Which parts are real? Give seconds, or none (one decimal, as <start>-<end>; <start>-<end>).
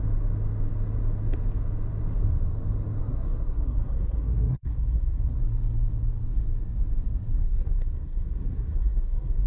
0.0-3.0; 5.4-7.4